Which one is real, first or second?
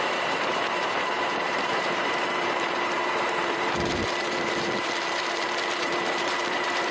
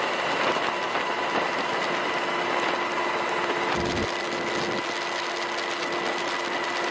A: second